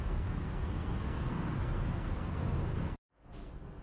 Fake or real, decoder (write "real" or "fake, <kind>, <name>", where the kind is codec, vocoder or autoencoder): fake, codec, SNAC